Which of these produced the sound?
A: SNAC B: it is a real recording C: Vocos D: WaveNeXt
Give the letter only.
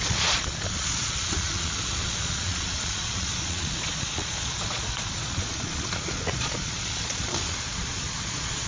C